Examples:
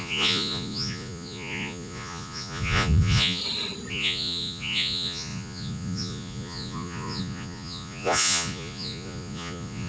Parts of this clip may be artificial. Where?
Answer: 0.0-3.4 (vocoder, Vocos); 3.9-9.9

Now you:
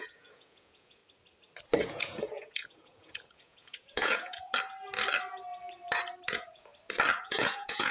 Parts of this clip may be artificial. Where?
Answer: 0.0-1.0 (vocoder, Vocos); 1.8-4.5; 6.3-6.7; 7.2-7.9

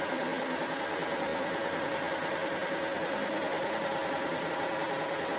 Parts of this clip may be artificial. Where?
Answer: none

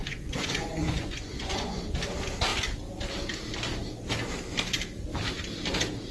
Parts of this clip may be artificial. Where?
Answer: 0.0-1.8 (vocoder, Vocos)

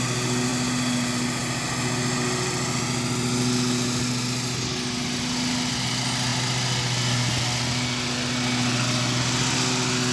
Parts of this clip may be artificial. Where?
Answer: none

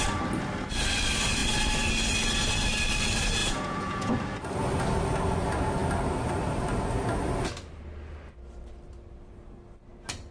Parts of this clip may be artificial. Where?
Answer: 3.4-4.1 (vocoder, Vocos)

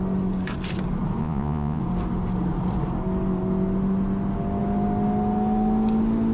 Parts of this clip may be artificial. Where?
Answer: 1.2-1.8 (vocoder, Vocos)